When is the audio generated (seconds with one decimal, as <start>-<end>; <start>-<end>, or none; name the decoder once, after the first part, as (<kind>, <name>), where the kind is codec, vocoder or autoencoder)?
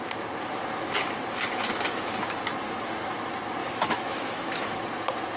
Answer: 3.6-4.8 (autoencoder, DAC-VAE)